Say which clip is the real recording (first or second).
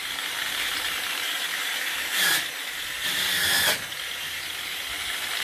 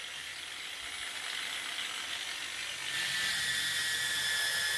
second